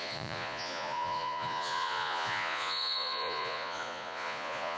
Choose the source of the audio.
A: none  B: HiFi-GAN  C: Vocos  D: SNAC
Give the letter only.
C